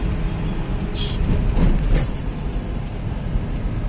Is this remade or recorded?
recorded